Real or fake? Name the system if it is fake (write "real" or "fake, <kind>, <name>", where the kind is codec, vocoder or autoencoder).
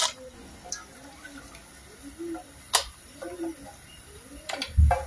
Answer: real